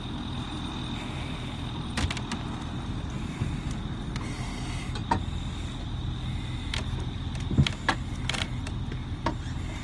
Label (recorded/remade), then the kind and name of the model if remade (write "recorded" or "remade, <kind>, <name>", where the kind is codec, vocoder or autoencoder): recorded